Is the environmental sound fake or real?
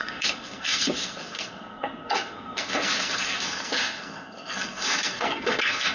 fake